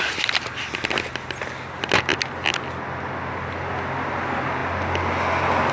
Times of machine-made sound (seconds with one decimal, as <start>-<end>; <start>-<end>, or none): none